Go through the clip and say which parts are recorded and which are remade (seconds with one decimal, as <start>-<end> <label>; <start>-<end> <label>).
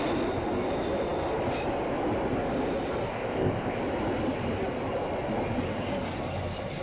0.0-3.1 recorded; 3.1-3.8 remade; 3.8-6.8 recorded